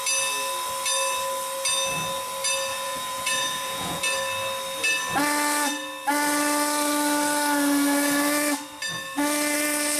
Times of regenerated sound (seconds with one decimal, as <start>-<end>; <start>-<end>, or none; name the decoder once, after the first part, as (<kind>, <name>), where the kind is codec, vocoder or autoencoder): 2.7-4.0 (vocoder, Vocos)